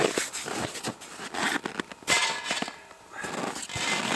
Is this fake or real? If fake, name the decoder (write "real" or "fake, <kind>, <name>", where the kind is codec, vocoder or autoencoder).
real